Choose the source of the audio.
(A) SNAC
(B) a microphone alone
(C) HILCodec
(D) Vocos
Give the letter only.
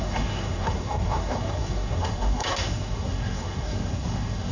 A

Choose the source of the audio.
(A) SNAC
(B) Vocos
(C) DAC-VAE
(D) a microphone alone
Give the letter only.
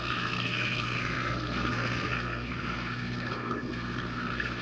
A